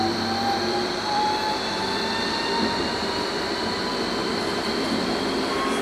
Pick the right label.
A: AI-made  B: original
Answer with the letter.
A